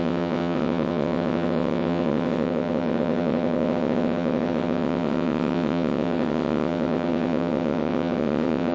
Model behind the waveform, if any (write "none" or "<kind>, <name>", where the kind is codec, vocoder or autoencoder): vocoder, WaveNeXt